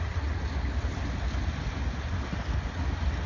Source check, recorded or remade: recorded